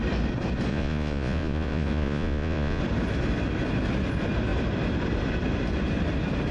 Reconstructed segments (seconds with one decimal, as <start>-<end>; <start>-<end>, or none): 0.7-2.8